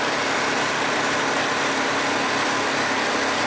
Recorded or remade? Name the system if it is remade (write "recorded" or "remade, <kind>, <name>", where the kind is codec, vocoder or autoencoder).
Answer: recorded